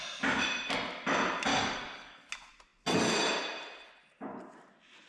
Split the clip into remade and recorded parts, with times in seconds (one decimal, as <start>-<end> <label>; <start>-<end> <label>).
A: 0.0-1.5 recorded; 1.5-2.3 remade; 2.3-5.1 recorded